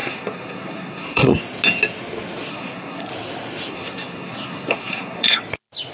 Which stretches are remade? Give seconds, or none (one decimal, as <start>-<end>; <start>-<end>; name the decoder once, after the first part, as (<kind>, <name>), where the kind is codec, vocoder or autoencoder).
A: 0.0-1.4 (codec, SNAC); 2.5-3.1; 3.7-5.4